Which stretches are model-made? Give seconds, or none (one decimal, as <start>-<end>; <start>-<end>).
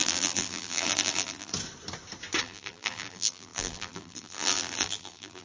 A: 0.0-1.5; 2.4-5.4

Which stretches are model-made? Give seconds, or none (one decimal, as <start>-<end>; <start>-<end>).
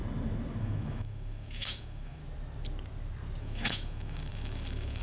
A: 0.6-2.2; 3.4-5.0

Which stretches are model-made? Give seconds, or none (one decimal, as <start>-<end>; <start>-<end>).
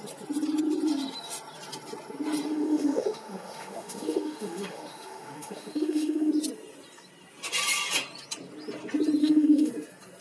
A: 2.5-6.3; 9.2-9.7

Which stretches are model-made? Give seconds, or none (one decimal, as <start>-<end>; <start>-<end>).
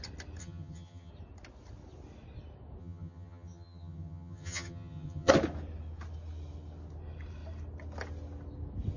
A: 0.4-1.1; 2.8-5.3